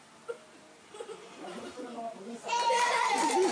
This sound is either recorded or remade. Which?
recorded